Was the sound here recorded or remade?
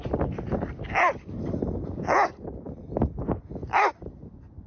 recorded